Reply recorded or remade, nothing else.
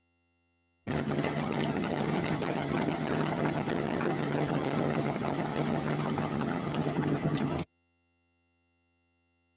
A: remade